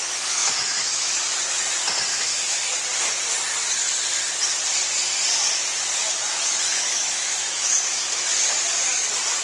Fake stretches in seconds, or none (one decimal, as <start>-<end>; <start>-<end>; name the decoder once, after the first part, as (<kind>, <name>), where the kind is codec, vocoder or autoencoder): 0.4-1.4 (autoencoder, DAC-VAE); 2.1-2.7; 6.0-7.8